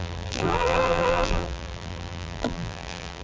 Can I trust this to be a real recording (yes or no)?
no